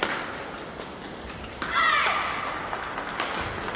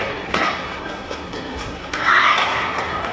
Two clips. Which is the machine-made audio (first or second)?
second